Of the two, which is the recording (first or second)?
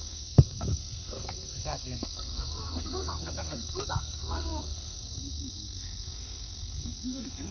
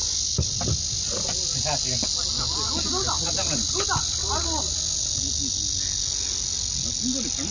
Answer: second